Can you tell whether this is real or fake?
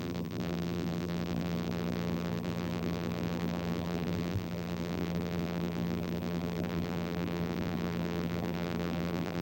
fake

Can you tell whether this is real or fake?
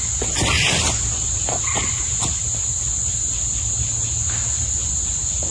real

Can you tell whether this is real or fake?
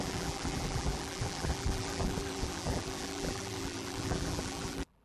fake